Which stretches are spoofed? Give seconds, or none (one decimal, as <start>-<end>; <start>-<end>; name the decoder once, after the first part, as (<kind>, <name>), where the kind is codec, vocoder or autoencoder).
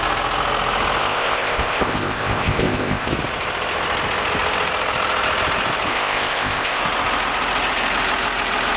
1.0-3.1 (codec, ZipCodec); 5.9-6.8